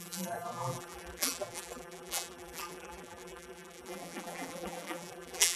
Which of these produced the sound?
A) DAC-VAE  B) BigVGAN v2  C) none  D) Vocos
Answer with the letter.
B